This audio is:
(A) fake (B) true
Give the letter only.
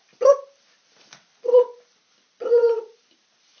B